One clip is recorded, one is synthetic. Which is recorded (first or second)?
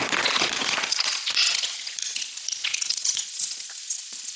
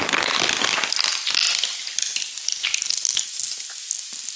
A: second